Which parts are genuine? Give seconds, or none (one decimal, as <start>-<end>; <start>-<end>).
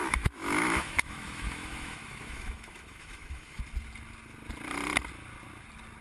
3.6-6.0